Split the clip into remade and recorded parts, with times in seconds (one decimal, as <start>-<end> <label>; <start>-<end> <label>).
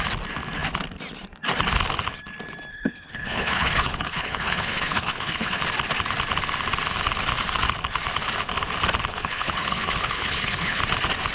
0.0-2.7 recorded; 2.7-5.6 remade; 5.6-9.1 recorded; 9.1-10.8 remade; 10.8-11.3 recorded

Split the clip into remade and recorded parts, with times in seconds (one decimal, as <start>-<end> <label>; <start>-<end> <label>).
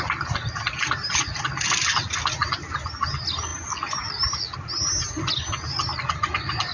0.0-6.7 recorded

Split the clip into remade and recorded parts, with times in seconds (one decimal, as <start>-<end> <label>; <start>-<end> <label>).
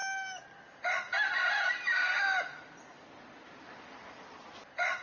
0.0-0.6 recorded; 0.6-5.0 remade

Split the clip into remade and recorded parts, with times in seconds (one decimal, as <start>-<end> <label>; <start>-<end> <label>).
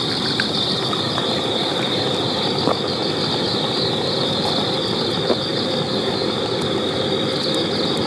0.0-8.1 recorded